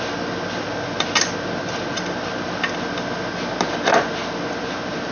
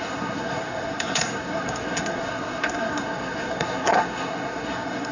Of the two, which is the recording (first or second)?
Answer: first